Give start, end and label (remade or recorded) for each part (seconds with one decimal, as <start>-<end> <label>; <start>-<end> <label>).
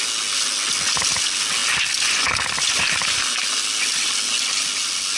0.0-5.2 recorded